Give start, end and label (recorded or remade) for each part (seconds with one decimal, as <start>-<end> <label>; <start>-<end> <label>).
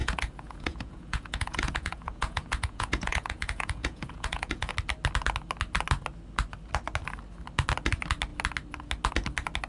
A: 0.0-4.7 remade; 4.7-9.7 recorded